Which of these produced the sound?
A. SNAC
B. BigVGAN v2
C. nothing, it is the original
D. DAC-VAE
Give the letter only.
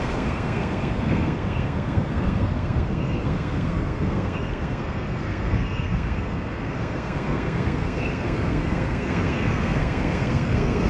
A